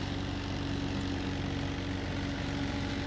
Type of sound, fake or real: real